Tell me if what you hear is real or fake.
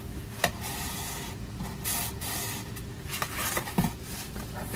real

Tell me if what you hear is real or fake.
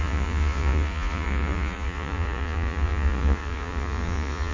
fake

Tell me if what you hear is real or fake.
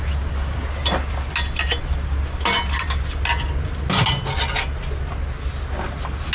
real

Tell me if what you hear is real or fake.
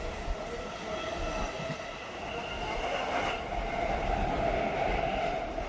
real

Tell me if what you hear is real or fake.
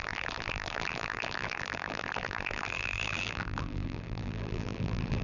fake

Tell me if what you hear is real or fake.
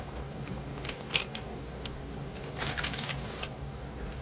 fake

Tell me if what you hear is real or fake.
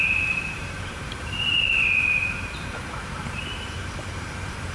fake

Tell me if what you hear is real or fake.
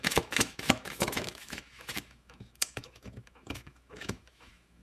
fake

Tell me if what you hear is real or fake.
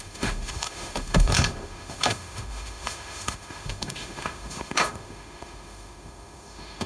fake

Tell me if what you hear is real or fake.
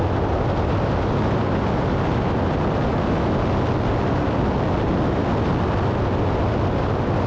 real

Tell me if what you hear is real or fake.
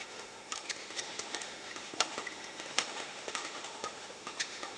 fake